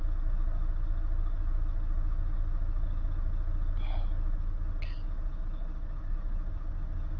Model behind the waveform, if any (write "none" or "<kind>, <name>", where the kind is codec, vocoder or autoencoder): none